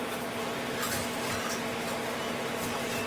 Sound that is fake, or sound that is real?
real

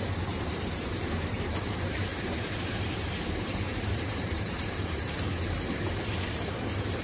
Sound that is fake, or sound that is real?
fake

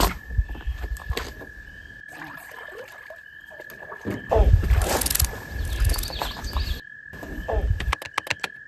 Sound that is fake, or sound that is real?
real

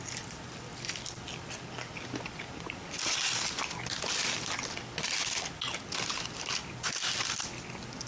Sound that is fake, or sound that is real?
real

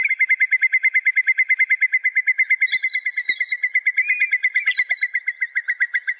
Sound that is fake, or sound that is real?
real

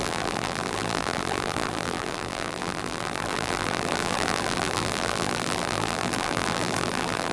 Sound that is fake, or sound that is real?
fake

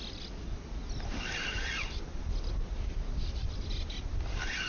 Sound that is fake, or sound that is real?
real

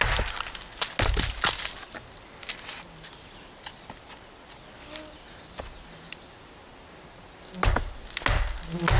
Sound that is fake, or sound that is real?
real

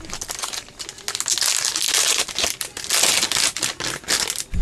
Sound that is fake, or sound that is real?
real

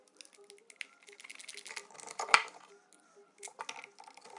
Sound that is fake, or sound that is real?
real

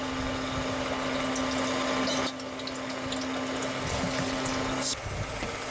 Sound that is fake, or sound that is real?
real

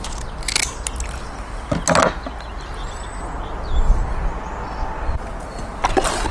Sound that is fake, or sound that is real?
real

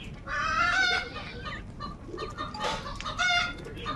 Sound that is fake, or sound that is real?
real